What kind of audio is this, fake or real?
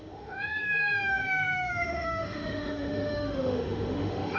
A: fake